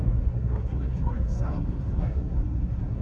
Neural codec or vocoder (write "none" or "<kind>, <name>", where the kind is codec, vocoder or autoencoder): codec, SNAC